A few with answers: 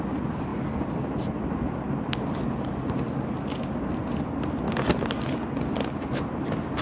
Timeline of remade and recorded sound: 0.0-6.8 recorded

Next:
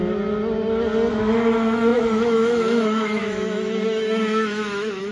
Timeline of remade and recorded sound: 0.0-1.1 recorded; 1.1-5.1 remade

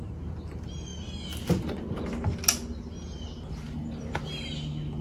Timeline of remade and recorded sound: 0.0-5.0 recorded

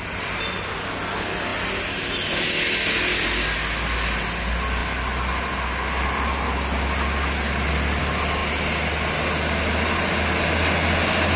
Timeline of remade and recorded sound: 0.0-11.4 recorded

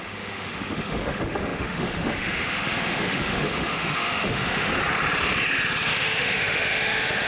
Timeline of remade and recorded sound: 0.0-4.7 remade; 4.7-5.9 recorded; 5.9-7.3 remade